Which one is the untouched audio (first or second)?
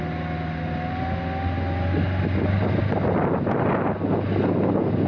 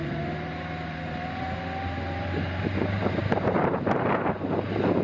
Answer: first